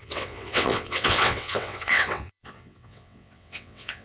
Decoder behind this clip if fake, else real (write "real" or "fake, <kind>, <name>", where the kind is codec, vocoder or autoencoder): fake, vocoder, WaveNeXt